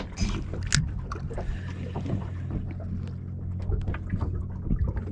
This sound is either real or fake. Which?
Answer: real